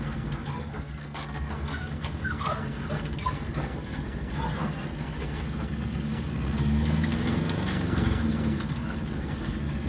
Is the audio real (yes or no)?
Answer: no